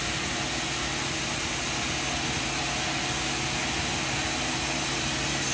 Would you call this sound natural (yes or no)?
yes